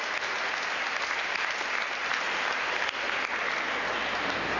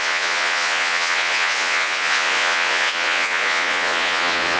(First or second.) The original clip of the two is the first